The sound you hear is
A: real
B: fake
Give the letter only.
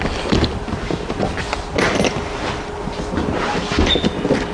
A